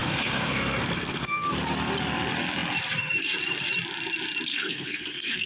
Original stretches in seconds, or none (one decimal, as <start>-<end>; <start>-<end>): 1.5-4.5